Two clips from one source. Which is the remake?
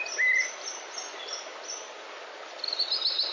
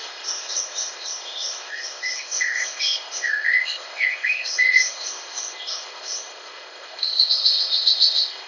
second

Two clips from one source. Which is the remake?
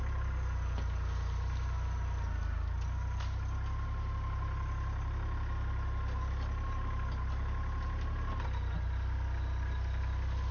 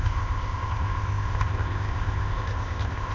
second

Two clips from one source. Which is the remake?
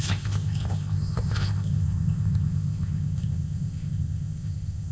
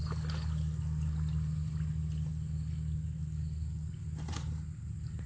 first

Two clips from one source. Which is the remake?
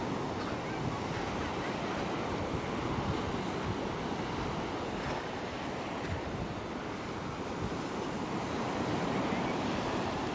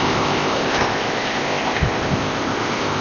second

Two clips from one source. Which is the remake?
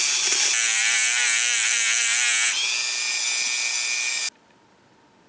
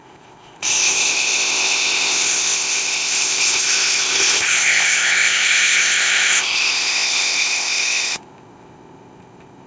second